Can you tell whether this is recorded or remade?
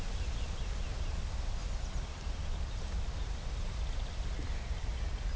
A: recorded